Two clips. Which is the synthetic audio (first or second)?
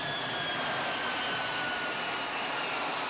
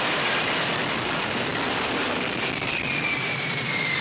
second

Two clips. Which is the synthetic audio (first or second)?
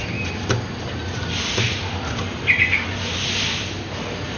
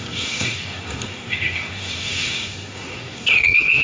second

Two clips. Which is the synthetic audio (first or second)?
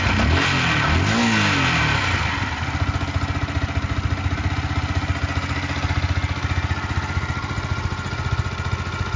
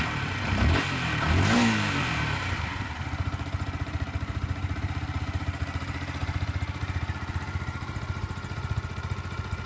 second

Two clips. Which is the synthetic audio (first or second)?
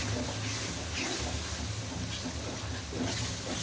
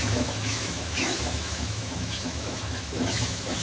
second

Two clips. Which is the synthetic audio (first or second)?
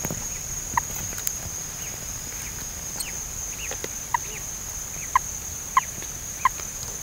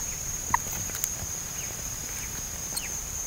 second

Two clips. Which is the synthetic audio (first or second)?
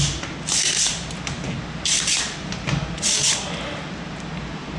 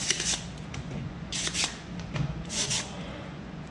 second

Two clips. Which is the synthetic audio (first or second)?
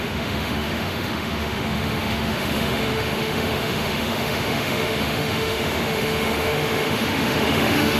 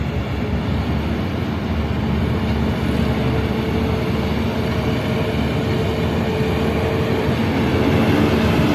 first